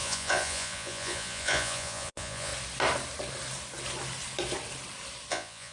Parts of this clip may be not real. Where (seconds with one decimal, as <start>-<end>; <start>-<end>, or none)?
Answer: 0.0-2.5; 5.3-5.7

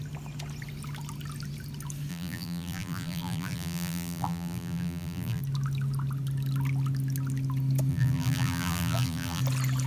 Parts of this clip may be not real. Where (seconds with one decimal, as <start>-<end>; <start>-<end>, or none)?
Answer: 2.1-5.4; 7.9-9.4

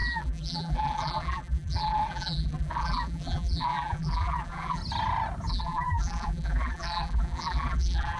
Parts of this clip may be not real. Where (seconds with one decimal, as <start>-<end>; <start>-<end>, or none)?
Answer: 0.0-4.8; 5.5-8.2